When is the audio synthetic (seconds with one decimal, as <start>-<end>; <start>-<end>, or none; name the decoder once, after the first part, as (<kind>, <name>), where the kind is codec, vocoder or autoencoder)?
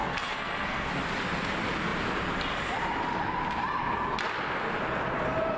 0.0-0.9 (codec, SNAC)